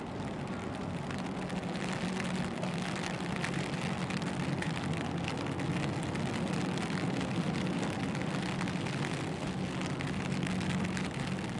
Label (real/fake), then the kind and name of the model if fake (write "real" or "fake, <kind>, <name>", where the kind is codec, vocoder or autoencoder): real